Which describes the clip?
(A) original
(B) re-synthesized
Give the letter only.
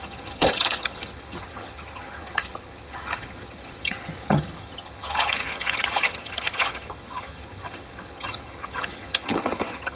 B